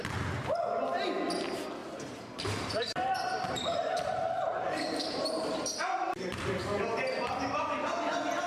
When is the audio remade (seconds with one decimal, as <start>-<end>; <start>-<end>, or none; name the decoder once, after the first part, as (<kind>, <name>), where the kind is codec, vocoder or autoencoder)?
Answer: 1.8-6.5 (vocoder, BigVGAN v2)